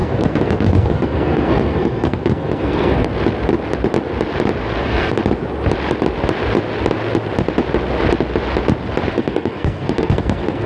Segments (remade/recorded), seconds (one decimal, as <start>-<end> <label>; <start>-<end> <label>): 0.0-3.1 remade; 3.1-4.8 recorded; 4.8-5.2 remade; 5.2-9.1 recorded; 9.1-10.7 remade